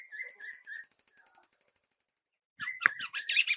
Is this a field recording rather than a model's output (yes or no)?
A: yes